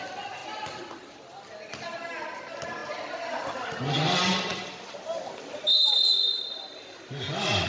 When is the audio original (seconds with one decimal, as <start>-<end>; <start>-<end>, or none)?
0.0-7.7